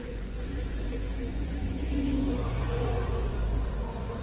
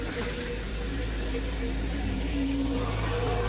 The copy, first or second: first